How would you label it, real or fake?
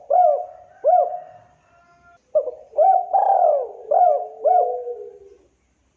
real